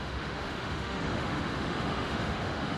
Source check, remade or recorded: remade